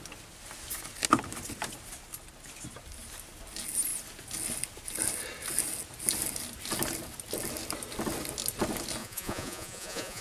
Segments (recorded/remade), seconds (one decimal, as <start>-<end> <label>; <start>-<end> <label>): 0.0-9.0 recorded; 9.0-10.2 remade